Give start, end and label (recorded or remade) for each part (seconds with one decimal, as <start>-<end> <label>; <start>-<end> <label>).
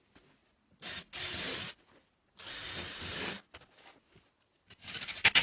0.0-5.4 recorded